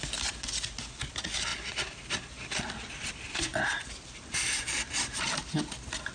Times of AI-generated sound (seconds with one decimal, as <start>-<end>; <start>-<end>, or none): none